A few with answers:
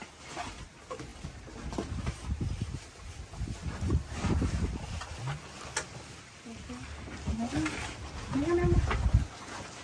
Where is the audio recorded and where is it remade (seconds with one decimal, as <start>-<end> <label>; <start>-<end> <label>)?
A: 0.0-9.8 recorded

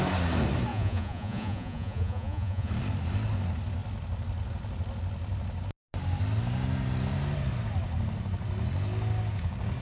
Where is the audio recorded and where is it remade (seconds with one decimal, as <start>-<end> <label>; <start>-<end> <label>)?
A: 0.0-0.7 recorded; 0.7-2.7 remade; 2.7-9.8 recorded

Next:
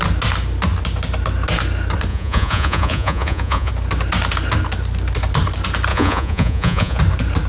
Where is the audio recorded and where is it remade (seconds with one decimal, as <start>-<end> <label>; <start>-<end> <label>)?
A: 0.0-2.1 recorded; 2.1-3.7 remade; 3.7-5.9 recorded; 5.9-7.0 remade; 7.0-7.5 recorded

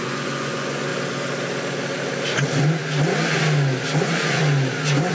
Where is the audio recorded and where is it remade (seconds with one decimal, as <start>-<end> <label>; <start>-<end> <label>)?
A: 0.0-0.9 remade; 0.9-4.0 recorded; 4.0-4.4 remade; 4.4-5.1 recorded

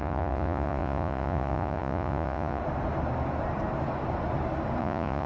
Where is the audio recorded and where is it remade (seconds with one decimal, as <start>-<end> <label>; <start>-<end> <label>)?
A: 0.0-2.6 remade; 2.6-4.8 recorded; 4.8-5.3 remade

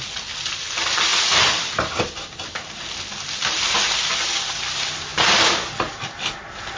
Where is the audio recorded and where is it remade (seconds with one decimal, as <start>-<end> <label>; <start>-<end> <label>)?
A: 0.0-6.8 recorded

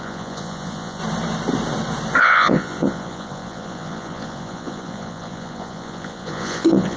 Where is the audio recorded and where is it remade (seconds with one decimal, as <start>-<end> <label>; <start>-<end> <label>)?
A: 0.0-1.0 remade; 1.0-2.2 recorded; 2.2-7.0 remade

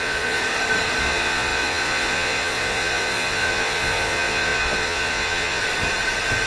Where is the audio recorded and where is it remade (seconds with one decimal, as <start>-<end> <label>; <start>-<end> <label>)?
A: 0.0-0.4 remade; 0.4-1.0 recorded; 1.0-5.6 remade; 5.6-6.5 recorded